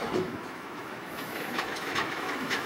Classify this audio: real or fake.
fake